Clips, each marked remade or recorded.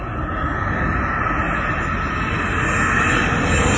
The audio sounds recorded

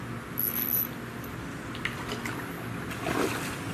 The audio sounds recorded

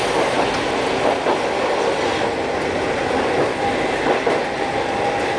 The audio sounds recorded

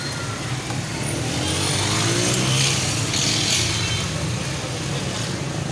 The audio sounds recorded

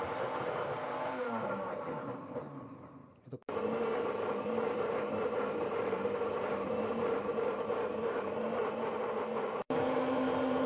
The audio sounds remade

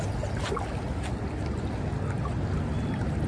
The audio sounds recorded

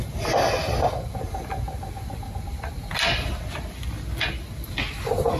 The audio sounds recorded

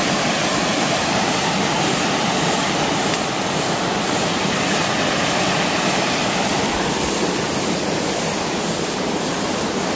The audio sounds remade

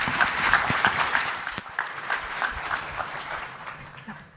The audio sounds remade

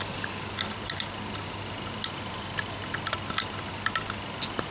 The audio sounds recorded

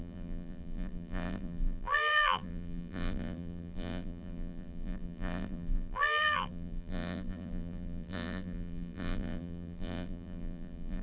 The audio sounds remade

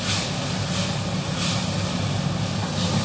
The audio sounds recorded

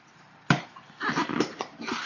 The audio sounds remade